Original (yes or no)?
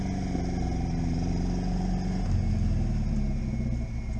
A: yes